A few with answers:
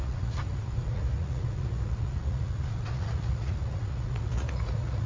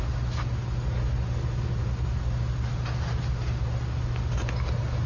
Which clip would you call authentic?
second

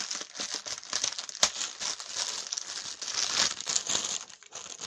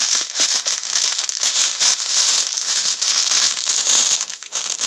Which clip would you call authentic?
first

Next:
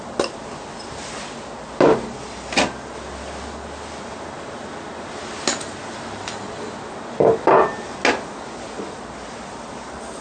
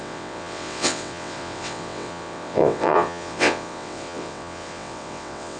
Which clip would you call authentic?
first